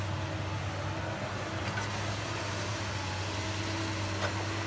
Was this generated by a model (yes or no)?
no